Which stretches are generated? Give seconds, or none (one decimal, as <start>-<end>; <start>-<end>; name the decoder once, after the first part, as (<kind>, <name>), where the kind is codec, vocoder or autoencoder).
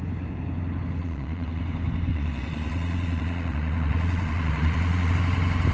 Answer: 1.0-1.6 (vocoder, Vocos); 2.1-5.1